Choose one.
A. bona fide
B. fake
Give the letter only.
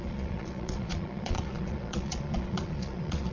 B